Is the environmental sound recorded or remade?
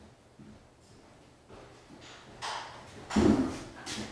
recorded